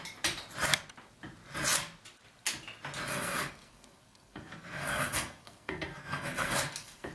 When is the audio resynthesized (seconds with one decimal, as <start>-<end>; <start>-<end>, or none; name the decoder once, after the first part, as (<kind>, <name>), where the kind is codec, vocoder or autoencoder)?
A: 3.1-7.1 (codec, SNAC)